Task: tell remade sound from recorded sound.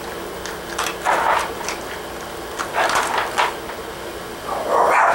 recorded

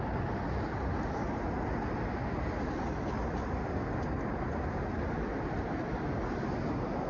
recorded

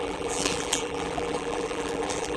remade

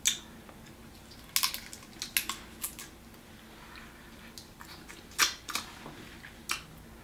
recorded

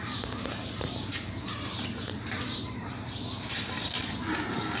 remade